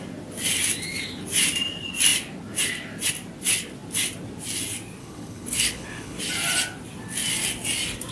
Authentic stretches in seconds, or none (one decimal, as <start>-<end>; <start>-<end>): 0.0-5.0; 6.2-8.1